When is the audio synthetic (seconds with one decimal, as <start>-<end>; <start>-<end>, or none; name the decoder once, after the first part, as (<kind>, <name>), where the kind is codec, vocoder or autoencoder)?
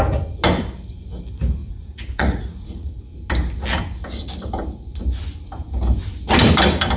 1.6-3.0 (vocoder, Vocos)